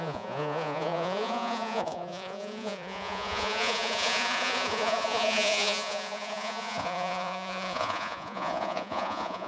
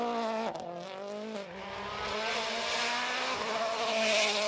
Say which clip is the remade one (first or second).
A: first